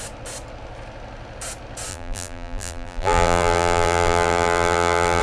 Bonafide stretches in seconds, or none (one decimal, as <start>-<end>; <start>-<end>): 0.0-1.9